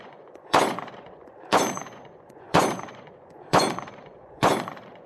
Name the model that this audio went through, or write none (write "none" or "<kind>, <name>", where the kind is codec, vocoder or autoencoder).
vocoder, Vocos